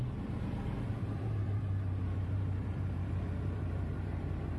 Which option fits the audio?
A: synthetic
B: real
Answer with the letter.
A